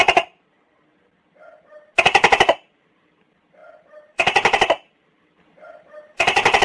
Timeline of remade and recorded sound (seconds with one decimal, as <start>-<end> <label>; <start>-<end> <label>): 0.0-2.8 recorded; 2.8-6.6 remade